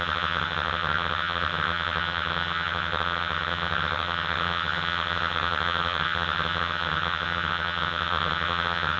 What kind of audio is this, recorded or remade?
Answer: remade